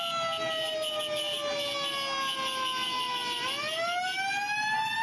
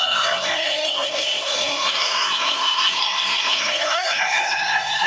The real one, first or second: first